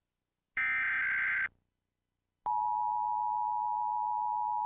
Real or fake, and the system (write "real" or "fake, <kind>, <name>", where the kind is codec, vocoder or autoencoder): real